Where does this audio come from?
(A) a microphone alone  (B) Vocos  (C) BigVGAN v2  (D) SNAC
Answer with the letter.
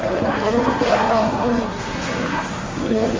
D